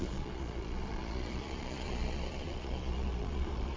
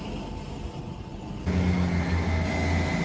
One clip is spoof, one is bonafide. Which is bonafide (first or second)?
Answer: second